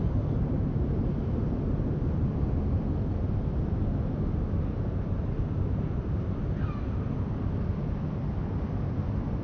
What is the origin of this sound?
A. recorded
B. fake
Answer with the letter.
A